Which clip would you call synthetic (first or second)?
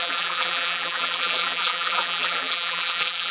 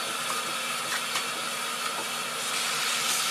first